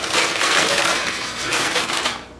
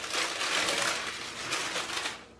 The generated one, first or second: first